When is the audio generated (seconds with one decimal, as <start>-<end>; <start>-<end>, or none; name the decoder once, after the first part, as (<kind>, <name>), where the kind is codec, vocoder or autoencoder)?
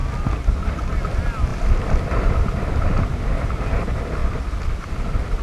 0.0-0.9 (vocoder, BigVGAN v2); 1.5-3.2; 4.2-5.4